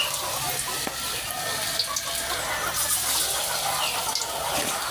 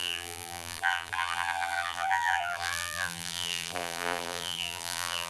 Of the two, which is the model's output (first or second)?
second